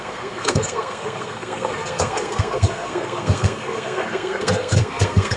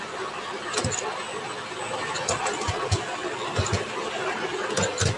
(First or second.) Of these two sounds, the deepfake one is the first